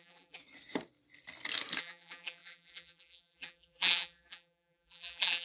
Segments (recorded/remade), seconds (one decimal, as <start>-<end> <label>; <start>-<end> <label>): 0.0-0.4 remade; 0.4-1.8 recorded; 1.8-5.4 remade